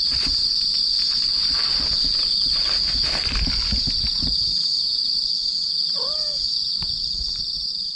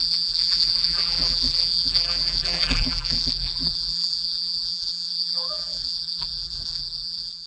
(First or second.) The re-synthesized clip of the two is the second